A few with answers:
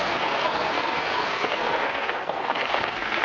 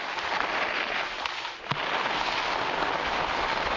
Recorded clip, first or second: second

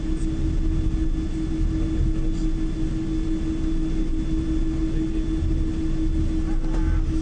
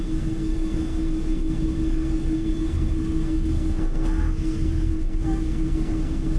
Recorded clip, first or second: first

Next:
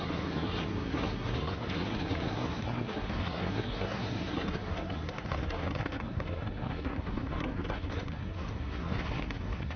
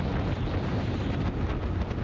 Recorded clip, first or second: second